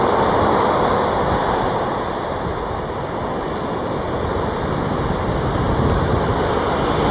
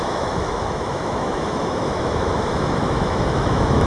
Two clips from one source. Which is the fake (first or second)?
second